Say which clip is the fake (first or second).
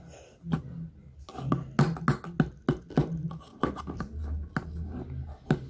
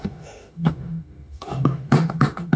second